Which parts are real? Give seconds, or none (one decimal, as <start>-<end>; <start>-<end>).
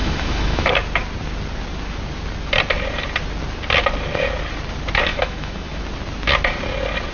0.7-5.1; 5.8-7.1